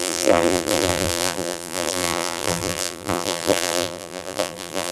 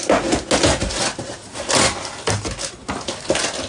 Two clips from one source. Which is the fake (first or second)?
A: first